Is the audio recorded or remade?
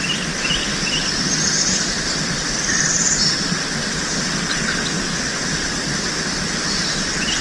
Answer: recorded